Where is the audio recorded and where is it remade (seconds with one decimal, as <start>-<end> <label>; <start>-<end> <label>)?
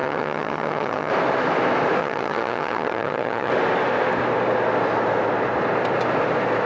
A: 0.0-1.1 remade; 1.1-2.0 recorded; 2.0-3.5 remade; 3.5-6.7 recorded